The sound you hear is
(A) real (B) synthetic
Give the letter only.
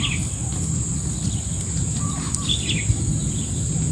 A